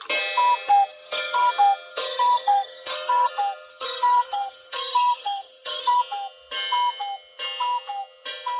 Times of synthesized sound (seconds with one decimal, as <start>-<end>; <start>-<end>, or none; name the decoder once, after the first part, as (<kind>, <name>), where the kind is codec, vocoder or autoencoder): 0.9-1.5 (codec, SNAC); 1.9-3.3; 3.7-6.0